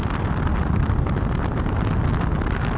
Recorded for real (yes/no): yes